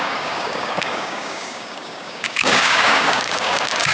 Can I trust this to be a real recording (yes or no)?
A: no